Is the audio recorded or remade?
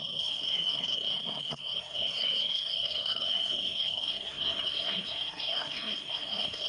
remade